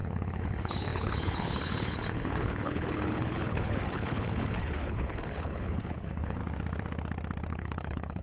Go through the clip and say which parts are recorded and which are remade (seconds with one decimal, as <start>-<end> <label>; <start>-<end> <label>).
0.0-6.4 remade; 6.4-7.5 recorded; 7.5-8.2 remade

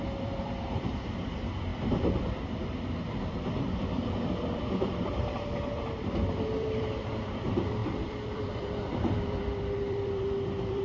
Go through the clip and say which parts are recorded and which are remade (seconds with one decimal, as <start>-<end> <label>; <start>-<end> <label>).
0.0-10.8 remade

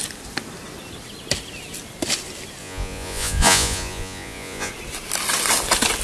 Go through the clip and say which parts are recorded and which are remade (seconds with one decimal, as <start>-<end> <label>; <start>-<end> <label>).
0.0-2.6 recorded; 2.6-4.7 remade; 4.7-6.0 recorded

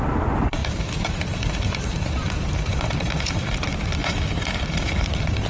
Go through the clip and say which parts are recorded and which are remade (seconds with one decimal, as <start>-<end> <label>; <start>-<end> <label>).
0.0-0.6 recorded; 0.6-3.4 remade; 3.4-4.0 recorded; 4.0-5.5 remade

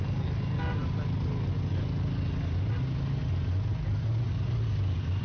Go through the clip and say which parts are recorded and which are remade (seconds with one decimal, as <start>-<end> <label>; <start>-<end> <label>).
0.0-5.2 recorded

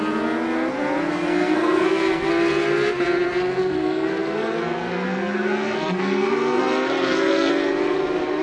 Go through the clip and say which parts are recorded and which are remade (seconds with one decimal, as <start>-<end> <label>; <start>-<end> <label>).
0.0-1.1 recorded; 1.1-2.3 remade; 2.3-3.6 recorded; 3.6-7.5 remade; 7.5-8.4 recorded

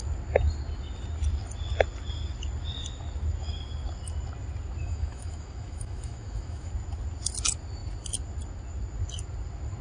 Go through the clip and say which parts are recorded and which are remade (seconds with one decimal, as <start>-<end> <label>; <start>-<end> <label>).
0.0-4.8 recorded; 4.8-6.7 remade; 6.7-9.8 recorded

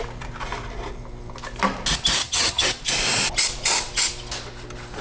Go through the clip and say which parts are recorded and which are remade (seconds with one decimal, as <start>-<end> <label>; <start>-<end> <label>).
0.0-2.2 recorded; 2.2-2.7 remade; 2.7-5.0 recorded